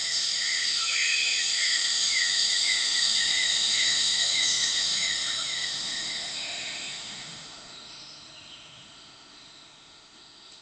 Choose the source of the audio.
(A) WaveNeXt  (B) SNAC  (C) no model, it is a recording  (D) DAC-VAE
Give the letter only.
D